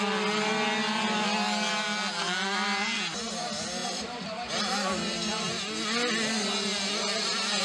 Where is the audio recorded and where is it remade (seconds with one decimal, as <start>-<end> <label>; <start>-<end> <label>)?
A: 0.0-3.8 recorded; 3.8-4.5 remade; 4.5-7.6 recorded